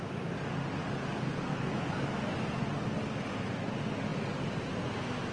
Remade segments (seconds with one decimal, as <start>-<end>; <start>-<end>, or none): 1.5-2.4